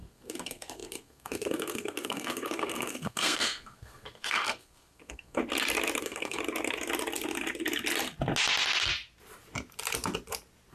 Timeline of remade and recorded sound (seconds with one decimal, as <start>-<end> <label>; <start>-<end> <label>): 0.0-5.4 remade; 5.4-6.0 recorded; 6.0-6.4 remade; 6.4-10.7 recorded